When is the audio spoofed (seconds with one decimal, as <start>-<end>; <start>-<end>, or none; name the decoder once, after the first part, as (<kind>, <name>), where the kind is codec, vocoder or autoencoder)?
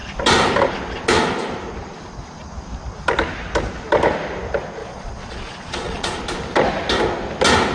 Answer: 4.8-6.2 (vocoder, Vocos)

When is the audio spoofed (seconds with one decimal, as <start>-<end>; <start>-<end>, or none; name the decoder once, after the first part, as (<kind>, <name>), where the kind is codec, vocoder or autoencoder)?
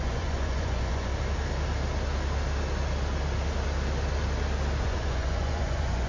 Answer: 0.0-1.1 (vocoder, Vocos); 4.8-6.1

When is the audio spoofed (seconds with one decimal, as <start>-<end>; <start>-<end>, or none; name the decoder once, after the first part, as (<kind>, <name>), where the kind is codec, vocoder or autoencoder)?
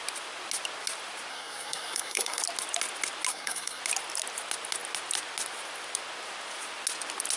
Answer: 1.3-2.4 (codec, SNAC); 3.3-3.8